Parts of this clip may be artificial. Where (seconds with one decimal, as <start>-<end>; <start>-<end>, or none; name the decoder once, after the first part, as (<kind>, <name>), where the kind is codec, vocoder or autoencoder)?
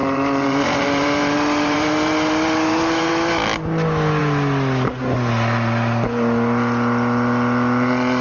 0.0-3.1 (vocoder, BigVGAN v2)